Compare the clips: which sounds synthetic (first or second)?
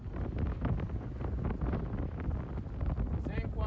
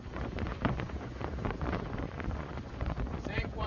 second